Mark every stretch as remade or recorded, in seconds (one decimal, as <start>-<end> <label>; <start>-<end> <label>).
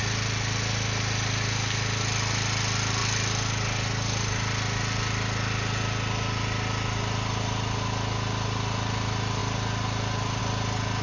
0.0-11.0 recorded